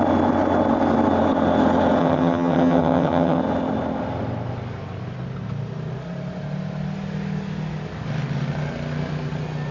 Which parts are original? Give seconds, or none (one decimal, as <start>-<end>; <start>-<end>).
0.0-2.0; 3.4-9.7